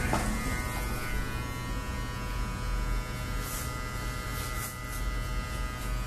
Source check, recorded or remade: recorded